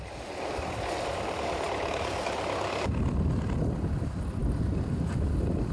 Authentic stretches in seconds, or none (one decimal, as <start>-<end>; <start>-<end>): 0.0-5.7